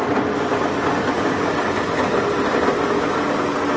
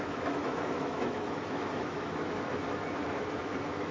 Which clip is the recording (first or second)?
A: first